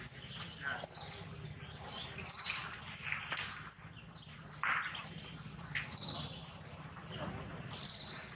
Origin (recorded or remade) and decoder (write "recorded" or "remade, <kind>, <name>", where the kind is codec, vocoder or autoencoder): recorded